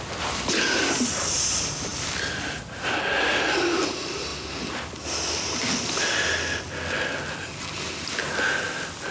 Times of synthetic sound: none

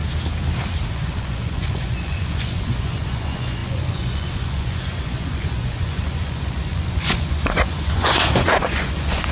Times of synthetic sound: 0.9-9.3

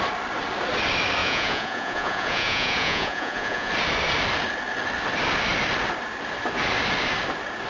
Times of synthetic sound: 1.2-3.7